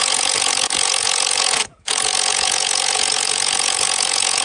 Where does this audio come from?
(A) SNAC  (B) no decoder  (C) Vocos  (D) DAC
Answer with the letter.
C